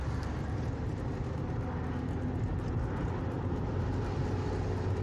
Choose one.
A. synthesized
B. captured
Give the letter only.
B